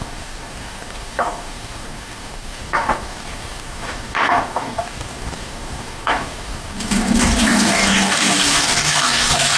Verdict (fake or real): fake